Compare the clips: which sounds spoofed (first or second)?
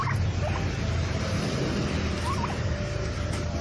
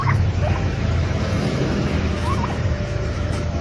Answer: second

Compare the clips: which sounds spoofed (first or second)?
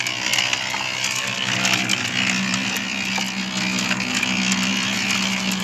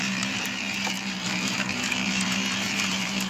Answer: second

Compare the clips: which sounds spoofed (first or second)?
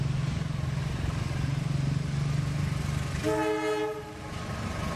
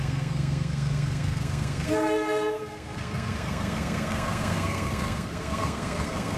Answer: second